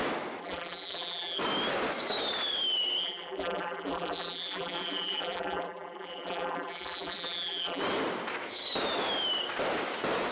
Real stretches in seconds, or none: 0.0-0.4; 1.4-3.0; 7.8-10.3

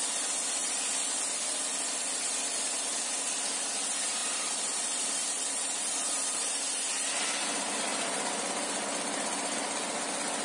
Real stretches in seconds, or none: 0.0-4.2; 6.9-10.4